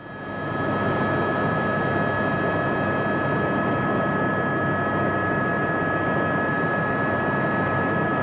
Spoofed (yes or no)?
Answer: no